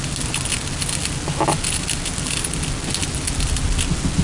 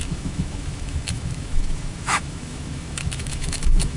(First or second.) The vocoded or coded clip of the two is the second